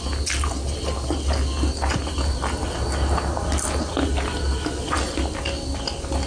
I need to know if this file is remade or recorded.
recorded